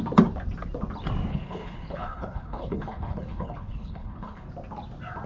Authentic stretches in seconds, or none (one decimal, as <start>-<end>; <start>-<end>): 0.0-1.3; 4.5-5.3